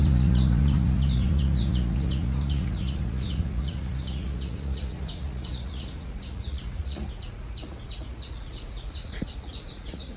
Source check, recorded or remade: remade